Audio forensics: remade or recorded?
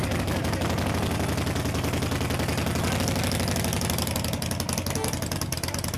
recorded